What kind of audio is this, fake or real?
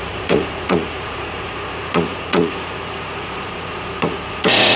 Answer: fake